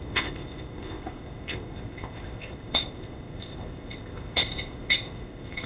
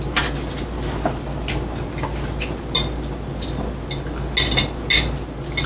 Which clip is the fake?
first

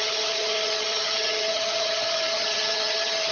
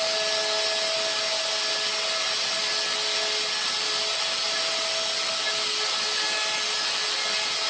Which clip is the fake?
first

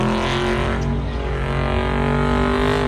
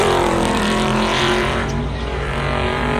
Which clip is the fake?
second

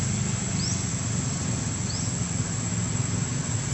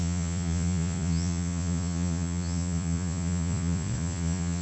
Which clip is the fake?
second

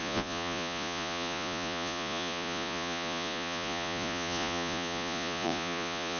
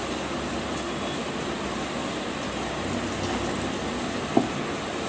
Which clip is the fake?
first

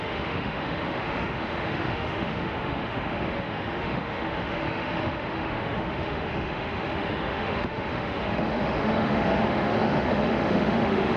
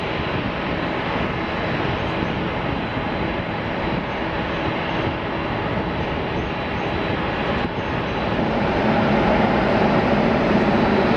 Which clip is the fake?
first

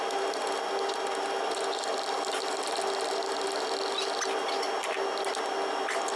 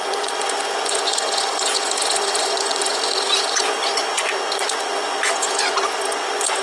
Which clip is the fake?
second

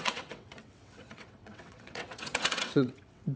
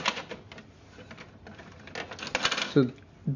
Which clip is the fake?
first